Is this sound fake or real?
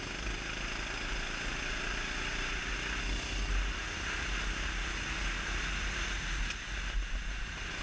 real